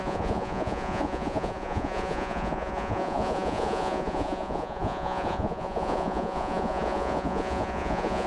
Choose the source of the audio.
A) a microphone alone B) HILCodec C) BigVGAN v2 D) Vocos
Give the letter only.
D